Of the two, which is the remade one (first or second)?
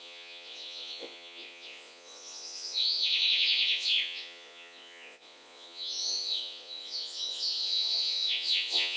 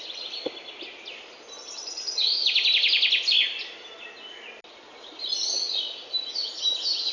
first